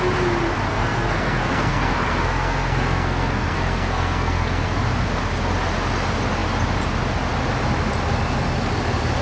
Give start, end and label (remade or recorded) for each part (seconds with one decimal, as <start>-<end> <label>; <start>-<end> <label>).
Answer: 0.0-0.7 recorded; 0.7-4.8 remade; 4.8-9.2 recorded